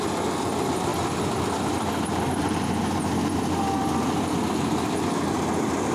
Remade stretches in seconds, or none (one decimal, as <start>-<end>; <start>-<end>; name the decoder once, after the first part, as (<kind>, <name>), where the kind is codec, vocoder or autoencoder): none